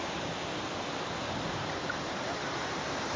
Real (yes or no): yes